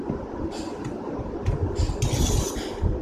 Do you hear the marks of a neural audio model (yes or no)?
no